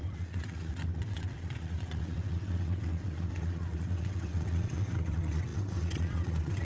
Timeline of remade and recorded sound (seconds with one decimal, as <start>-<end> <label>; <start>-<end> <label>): 0.0-6.6 remade